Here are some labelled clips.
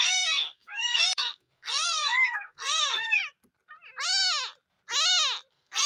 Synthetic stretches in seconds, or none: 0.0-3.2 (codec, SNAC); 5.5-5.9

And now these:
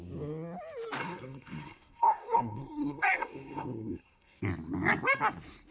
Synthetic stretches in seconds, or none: 1.0-4.4 (codec, SNAC)

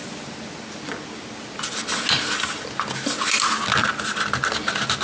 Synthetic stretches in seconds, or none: none

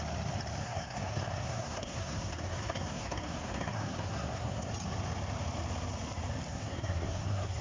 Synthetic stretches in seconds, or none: 0.6-4.7 (codec, SNAC); 6.5-7.6

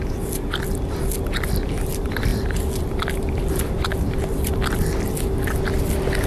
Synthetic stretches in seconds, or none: none

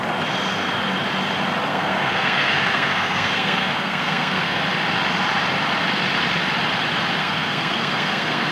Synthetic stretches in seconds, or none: 1.7-4.6 (codec, SNAC); 7.2-8.5

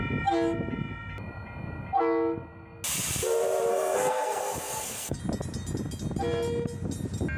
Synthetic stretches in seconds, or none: 3.7-5.2 (codec, SNAC)